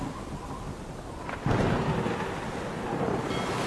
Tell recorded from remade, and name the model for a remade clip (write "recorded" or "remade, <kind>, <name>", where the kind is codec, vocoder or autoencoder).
recorded